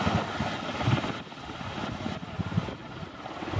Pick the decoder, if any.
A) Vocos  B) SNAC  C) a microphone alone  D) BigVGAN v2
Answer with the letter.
C